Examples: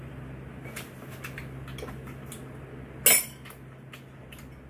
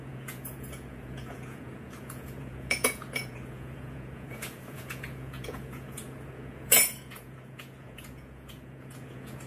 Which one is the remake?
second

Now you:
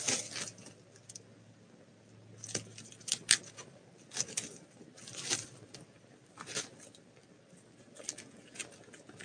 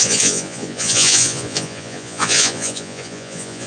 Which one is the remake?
second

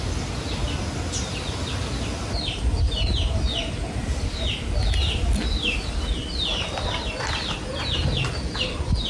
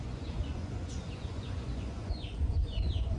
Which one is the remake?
second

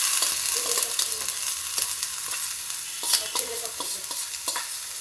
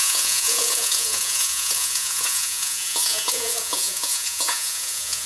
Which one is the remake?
second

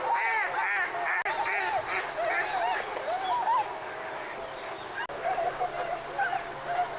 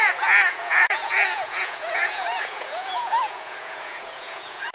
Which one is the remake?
second